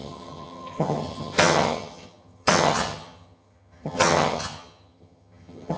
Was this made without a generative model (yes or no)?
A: no